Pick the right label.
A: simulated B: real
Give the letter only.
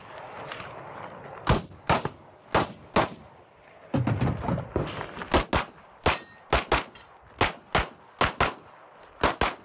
B